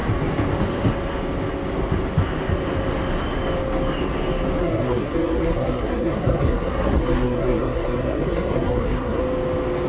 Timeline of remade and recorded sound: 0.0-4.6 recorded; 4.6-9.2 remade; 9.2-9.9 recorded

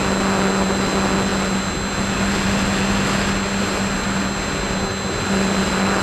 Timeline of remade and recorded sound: 0.0-6.0 recorded

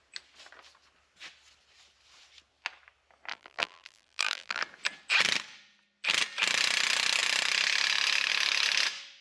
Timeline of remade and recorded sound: 0.0-3.3 recorded; 3.3-4.6 remade; 4.6-9.2 recorded

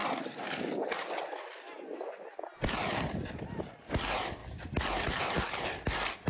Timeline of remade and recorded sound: 0.0-6.3 recorded